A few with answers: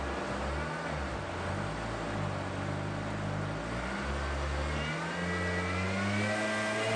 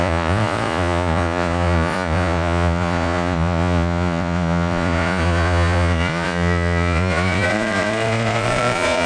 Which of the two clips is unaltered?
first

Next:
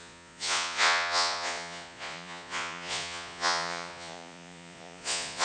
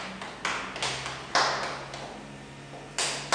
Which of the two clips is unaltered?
second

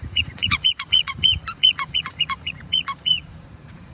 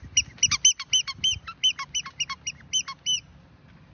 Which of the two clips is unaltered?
second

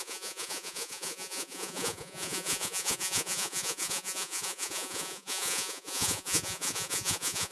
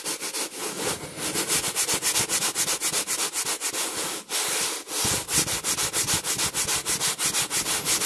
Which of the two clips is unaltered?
second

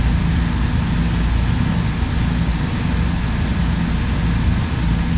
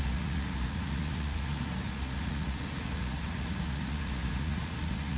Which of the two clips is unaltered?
first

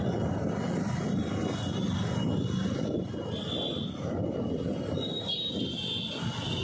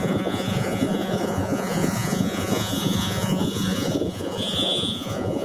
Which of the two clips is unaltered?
first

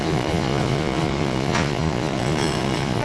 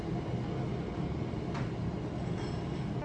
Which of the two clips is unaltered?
second